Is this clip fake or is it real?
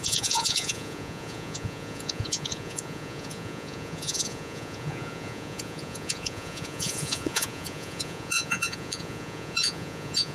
fake